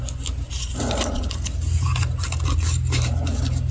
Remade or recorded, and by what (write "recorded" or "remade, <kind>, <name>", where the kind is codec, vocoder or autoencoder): recorded